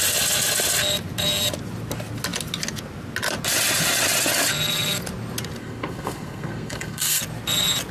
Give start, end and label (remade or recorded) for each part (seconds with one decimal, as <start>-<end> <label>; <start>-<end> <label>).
0.0-5.6 recorded; 5.6-7.2 remade; 7.2-7.9 recorded